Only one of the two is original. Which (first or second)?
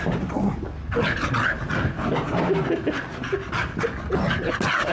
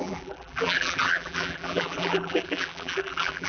first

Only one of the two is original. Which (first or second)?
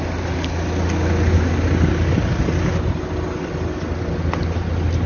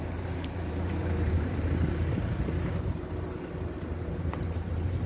first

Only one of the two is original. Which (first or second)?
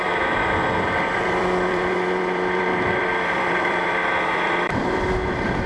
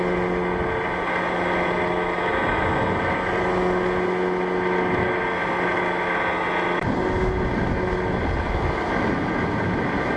second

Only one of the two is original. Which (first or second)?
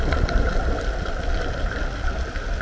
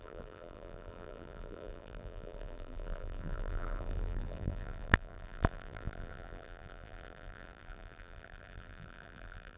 first